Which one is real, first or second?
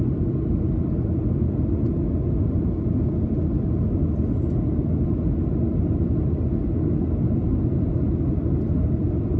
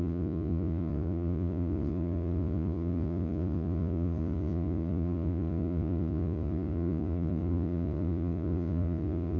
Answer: first